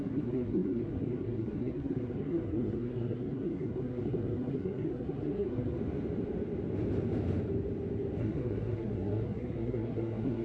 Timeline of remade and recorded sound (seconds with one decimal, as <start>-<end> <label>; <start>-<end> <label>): 0.0-5.8 remade; 5.8-8.2 recorded; 8.2-10.4 remade

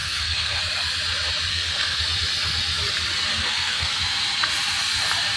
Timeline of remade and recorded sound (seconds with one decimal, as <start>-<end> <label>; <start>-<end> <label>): 0.0-0.6 remade; 0.6-1.5 recorded; 1.5-2.0 remade; 2.0-3.3 recorded; 3.3-4.0 remade; 4.0-5.4 recorded

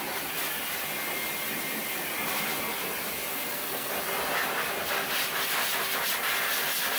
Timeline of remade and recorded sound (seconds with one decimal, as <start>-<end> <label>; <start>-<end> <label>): 0.0-3.3 recorded; 3.3-3.9 remade; 3.9-7.0 recorded

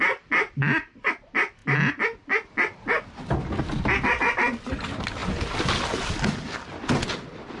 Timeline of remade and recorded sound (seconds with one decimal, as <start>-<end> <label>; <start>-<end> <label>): 0.0-7.6 recorded

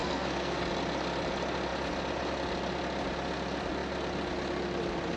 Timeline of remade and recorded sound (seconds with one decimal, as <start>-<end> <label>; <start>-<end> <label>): 0.0-0.6 remade; 0.6-5.2 recorded

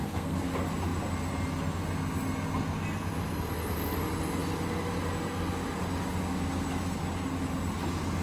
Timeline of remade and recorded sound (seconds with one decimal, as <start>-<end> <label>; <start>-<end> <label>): 0.0-0.5 remade; 0.5-8.2 recorded

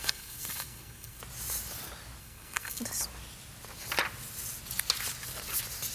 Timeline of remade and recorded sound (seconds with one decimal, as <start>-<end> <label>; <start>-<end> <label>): 0.0-1.2 remade; 1.2-2.2 recorded; 2.2-2.8 remade; 2.8-5.9 recorded